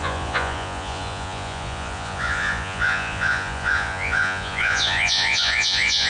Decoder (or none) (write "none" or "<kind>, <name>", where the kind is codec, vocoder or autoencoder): vocoder, Vocos